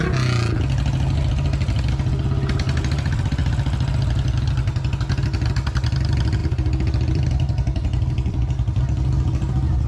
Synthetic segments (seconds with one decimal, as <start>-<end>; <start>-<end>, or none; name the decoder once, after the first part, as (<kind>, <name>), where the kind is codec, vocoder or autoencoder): 6.4-8.8 (vocoder, BigVGAN v2)